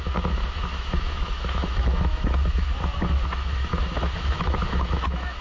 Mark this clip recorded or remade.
remade